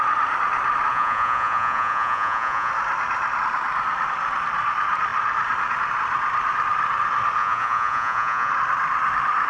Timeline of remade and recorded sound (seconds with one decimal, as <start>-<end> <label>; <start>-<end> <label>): 0.0-0.9 recorded; 0.9-2.7 remade; 2.7-7.4 recorded; 7.4-8.5 remade; 8.5-9.5 recorded